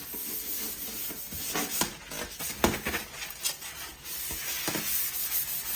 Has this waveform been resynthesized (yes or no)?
no